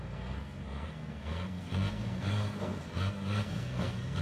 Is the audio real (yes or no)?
no